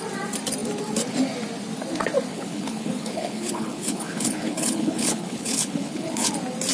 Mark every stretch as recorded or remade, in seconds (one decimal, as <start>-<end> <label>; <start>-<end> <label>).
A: 0.0-2.3 recorded; 2.3-6.3 remade; 6.3-6.7 recorded